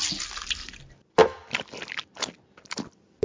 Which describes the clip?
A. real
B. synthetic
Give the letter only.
A